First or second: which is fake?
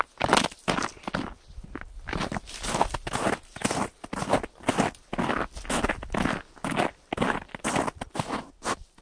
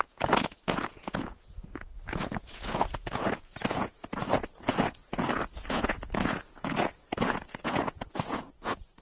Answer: second